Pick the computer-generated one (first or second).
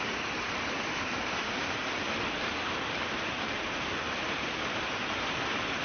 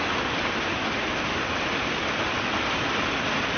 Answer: first